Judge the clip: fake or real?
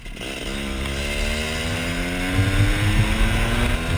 real